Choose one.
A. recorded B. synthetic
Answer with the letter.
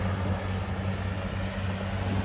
A